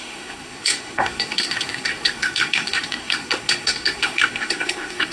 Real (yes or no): no